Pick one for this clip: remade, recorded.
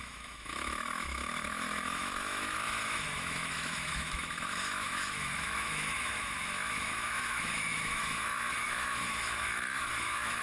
remade